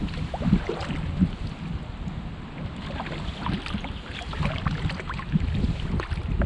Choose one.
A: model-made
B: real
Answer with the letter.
B